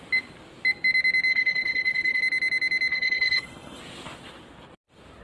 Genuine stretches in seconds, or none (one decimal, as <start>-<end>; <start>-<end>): 0.0-1.3; 2.2-2.9; 3.8-5.2